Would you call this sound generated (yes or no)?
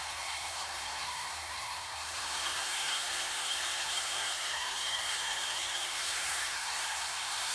yes